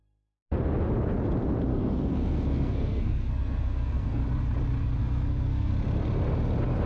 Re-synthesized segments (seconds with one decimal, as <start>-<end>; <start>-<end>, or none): 1.7-4.2; 4.8-5.7